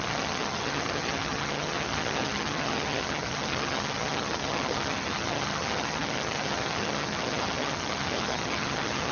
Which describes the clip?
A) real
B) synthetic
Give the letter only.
B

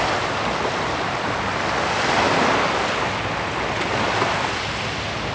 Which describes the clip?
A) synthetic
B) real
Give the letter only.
B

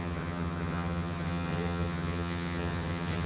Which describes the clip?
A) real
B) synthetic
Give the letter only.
B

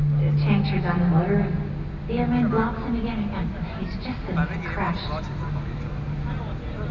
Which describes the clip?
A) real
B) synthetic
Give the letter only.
A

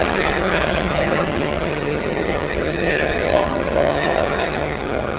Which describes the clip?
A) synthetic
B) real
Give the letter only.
A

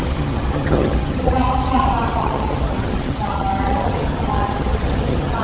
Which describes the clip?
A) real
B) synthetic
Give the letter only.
B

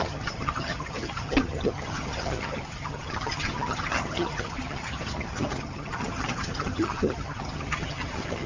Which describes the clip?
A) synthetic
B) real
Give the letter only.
A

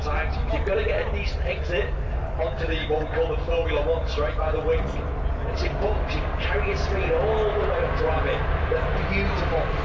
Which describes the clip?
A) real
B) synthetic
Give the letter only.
A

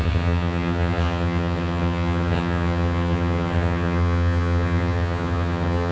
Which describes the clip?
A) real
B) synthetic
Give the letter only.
B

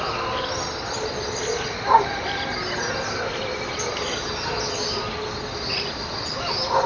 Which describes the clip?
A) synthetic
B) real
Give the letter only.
B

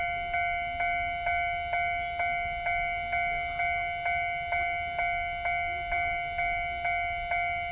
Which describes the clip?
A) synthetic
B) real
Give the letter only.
B